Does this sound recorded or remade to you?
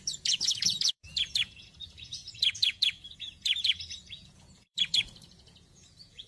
remade